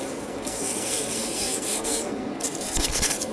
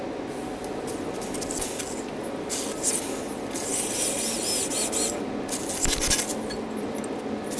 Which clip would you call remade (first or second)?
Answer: first